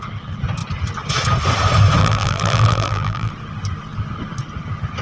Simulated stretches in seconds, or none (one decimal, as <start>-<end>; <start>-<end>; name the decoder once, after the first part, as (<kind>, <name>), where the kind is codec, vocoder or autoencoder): 2.0-3.3 (vocoder, BigVGAN v2)